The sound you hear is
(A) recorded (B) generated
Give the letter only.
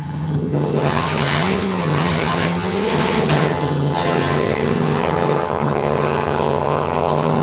B